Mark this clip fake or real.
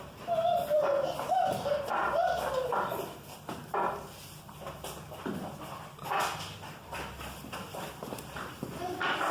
fake